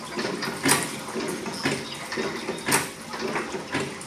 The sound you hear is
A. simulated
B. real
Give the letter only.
B